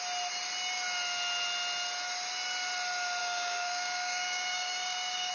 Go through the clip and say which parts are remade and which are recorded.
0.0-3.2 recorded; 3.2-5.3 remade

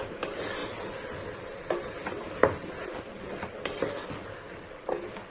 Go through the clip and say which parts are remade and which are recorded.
0.0-5.3 recorded